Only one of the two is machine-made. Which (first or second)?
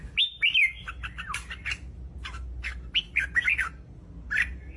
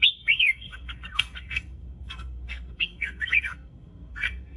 second